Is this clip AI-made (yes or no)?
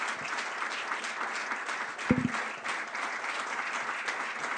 no